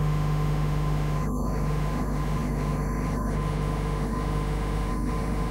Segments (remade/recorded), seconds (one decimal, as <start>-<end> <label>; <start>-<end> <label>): 0.0-5.5 remade